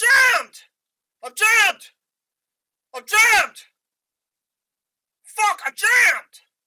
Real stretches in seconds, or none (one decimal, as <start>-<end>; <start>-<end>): 0.0-6.7